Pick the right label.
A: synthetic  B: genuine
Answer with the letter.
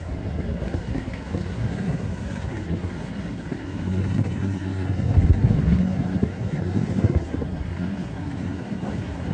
A